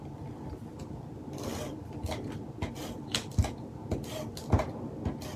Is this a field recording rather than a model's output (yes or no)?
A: yes